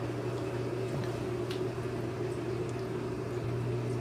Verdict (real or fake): real